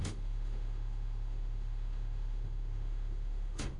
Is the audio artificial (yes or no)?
yes